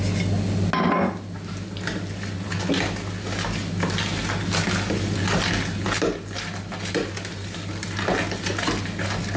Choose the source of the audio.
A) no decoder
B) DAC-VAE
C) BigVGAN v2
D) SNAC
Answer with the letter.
A